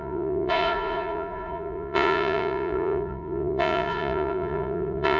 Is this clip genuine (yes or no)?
no